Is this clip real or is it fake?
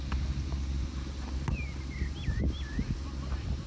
real